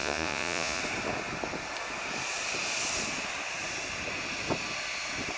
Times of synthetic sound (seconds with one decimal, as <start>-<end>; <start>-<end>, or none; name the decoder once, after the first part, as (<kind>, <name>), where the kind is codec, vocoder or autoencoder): 0.0-0.8 (vocoder, Vocos)